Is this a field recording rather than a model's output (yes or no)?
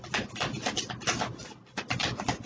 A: yes